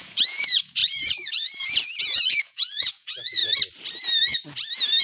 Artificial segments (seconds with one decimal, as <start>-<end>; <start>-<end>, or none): 0.0-3.4